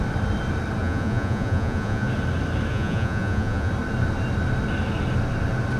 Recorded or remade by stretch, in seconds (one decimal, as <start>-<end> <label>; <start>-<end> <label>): 0.0-0.8 recorded; 0.8-2.1 remade; 2.1-2.7 recorded; 2.7-3.7 remade; 3.7-5.8 recorded